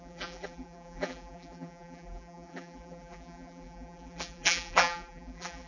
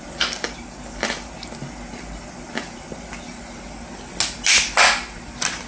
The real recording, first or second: second